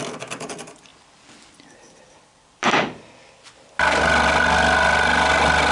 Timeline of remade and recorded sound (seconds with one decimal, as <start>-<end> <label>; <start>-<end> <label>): 0.0-0.9 recorded; 0.9-3.5 remade; 3.5-5.7 recorded